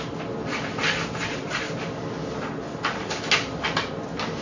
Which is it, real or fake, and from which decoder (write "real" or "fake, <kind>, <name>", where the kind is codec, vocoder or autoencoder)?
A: real